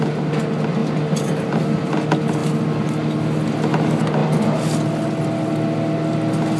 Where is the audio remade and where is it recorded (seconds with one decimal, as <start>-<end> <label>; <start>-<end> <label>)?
0.0-0.8 recorded; 0.8-1.6 remade; 1.6-6.6 recorded